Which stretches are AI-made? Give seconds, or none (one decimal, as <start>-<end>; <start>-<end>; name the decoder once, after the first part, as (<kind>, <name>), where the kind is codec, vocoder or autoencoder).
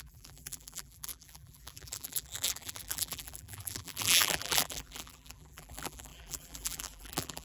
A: 0.0-7.4 (vocoder, BigVGAN v2)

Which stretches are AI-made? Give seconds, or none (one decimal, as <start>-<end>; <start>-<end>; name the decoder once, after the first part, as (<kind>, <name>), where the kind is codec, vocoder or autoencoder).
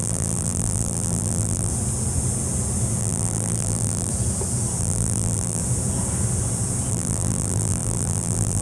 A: 0.0-1.7 (vocoder, BigVGAN v2); 3.0-4.1; 4.8-5.6; 6.9-8.6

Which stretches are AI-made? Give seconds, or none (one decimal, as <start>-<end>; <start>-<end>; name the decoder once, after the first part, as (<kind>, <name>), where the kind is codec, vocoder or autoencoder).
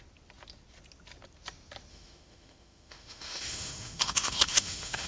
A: 1.9-5.1 (autoencoder, DAC-VAE)